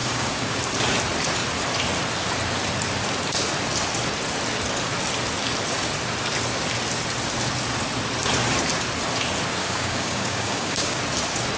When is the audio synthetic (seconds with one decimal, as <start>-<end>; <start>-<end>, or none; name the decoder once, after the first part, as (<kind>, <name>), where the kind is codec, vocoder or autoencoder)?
0.0-0.6 (codec, DAC); 9.6-11.0